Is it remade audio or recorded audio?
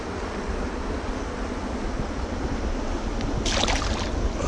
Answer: recorded